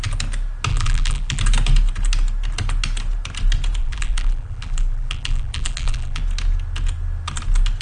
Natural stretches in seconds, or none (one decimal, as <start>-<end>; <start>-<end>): 0.0-0.7; 1.4-3.8; 6.2-7.8